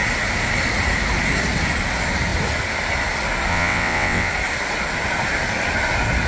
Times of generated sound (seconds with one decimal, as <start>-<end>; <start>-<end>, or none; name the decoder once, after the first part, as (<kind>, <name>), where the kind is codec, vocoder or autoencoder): 3.5-4.3 (vocoder, WaveNeXt)